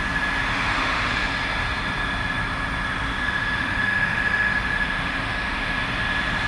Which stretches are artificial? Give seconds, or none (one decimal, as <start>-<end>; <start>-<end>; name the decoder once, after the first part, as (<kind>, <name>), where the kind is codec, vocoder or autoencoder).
0.5-1.3 (autoencoder, DAC-VAE); 3.1-5.8